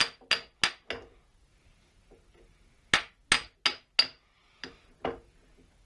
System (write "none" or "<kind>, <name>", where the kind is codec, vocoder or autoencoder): none